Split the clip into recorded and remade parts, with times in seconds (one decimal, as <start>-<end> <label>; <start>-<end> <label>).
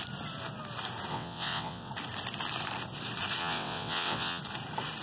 0.0-1.1 recorded; 1.1-1.9 remade; 1.9-3.4 recorded; 3.4-4.4 remade; 4.4-5.0 recorded